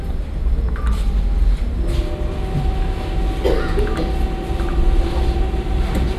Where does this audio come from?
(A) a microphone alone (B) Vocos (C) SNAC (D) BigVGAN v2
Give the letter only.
A